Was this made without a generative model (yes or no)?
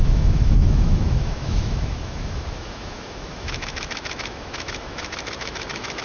no